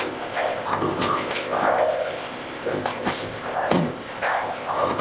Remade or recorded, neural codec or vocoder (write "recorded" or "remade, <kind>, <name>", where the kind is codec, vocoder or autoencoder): remade, codec, ZipCodec